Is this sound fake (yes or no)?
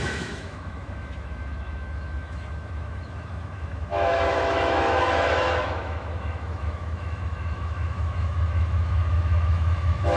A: yes